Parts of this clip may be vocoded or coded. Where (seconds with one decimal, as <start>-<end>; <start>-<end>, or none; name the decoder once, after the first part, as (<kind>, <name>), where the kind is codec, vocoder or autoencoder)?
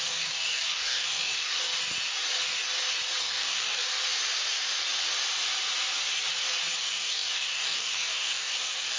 0.0-1.7 (codec, DAC); 3.2-3.8; 6.8-9.0